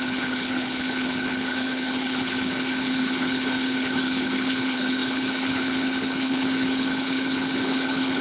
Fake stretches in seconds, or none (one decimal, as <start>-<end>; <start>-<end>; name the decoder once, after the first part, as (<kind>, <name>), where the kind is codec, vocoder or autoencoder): 0.0-8.2 (codec, HILCodec)